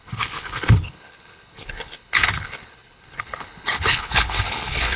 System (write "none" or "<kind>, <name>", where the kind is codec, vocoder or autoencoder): codec, HILCodec